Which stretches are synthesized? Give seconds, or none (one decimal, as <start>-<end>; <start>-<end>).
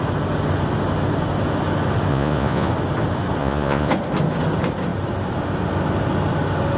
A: 2.1-2.7; 3.4-3.9